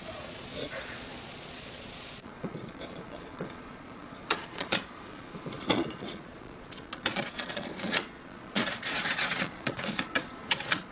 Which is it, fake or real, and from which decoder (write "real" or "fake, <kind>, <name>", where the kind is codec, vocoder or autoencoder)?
fake, vocoder, Vocos